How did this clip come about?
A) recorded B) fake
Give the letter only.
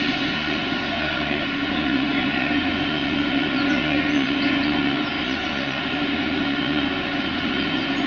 B